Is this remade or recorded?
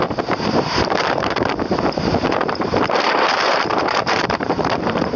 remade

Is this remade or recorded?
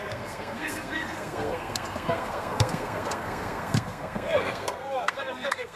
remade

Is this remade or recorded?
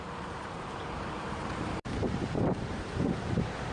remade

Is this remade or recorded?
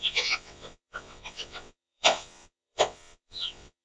remade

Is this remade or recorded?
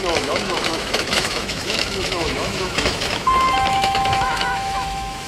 remade